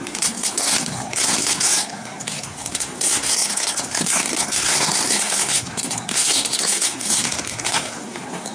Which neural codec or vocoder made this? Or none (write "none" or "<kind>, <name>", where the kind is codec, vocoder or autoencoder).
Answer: codec, SNAC